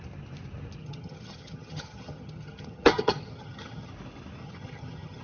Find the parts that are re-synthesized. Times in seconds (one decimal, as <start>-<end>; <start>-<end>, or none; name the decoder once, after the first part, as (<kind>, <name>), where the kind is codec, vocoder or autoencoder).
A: 0.8-3.9 (vocoder, HiFi-GAN); 4.4-5.2